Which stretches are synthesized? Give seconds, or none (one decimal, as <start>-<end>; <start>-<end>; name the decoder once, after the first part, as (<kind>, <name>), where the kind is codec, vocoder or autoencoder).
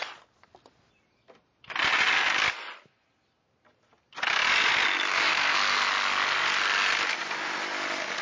none